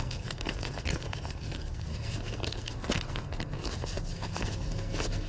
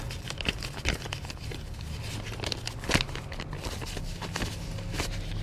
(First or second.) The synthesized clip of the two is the first